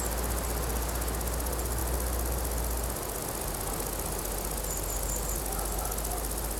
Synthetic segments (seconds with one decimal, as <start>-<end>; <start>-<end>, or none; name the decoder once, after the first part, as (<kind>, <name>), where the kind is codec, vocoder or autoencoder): none